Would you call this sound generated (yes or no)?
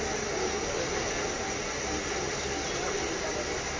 no